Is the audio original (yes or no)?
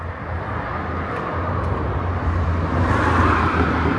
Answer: yes